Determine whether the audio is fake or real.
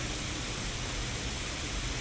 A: real